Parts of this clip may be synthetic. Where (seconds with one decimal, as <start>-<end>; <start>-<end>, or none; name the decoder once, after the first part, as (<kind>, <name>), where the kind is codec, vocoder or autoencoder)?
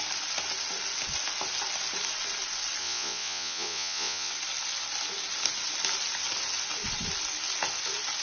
2.8-4.3 (vocoder, Vocos)